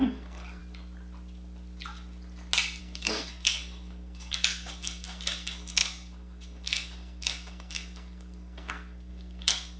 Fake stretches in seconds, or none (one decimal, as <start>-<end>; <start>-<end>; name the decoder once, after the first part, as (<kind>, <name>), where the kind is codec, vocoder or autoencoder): 0.0-0.6 (codec, SNAC); 2.8-9.8